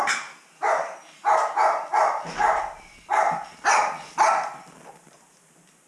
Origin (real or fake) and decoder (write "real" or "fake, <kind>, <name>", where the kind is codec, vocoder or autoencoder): real